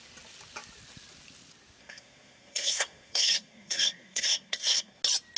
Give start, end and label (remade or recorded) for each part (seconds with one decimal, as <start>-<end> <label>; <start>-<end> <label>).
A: 0.0-1.8 recorded; 1.8-5.0 remade; 5.0-5.4 recorded